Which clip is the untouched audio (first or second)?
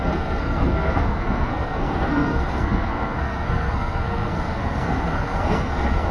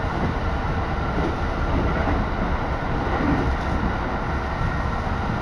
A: second